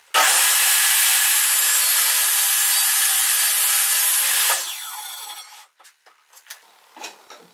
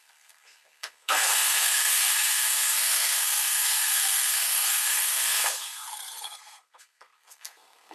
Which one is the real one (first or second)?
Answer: first